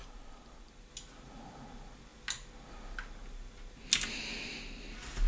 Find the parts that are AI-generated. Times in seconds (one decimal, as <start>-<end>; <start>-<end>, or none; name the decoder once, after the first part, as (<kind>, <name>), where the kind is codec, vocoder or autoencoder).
0.0-0.9 (vocoder, BigVGAN v2)